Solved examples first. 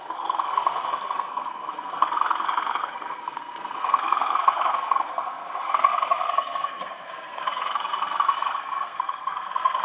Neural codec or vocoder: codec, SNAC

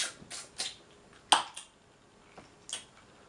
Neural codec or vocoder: none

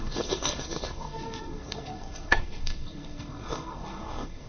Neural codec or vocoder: codec, SNAC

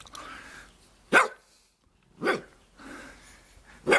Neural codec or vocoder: none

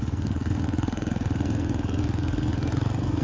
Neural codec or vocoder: codec, SNAC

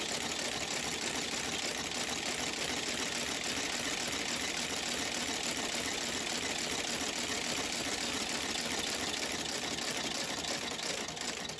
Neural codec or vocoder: none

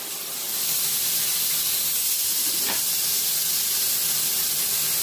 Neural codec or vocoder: none